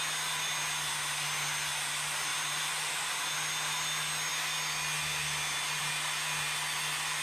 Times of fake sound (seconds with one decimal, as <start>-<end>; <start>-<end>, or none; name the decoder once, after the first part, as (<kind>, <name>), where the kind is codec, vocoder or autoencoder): 2.3-2.9 (vocoder, BigVGAN v2)